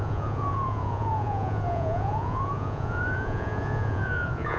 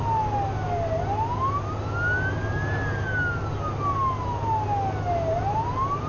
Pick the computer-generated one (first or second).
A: first